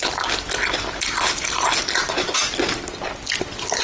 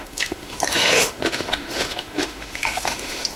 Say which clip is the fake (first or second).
second